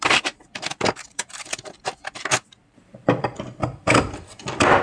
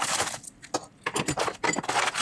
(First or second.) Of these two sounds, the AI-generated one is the first